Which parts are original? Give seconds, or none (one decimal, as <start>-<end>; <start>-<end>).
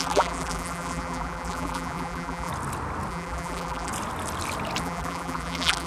2.5-3.1; 3.9-4.8